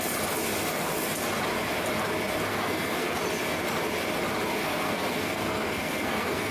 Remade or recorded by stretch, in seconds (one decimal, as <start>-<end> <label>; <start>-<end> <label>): 0.0-2.5 recorded; 2.5-3.2 remade; 3.2-4.6 recorded; 4.6-6.5 remade